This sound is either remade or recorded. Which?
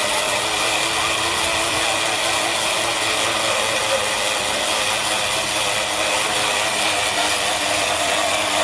recorded